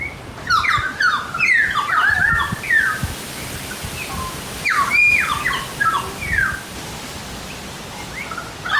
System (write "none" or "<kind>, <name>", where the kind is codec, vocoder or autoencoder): none